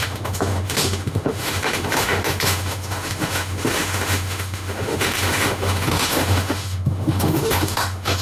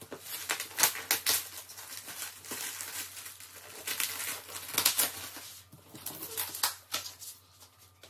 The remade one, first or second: first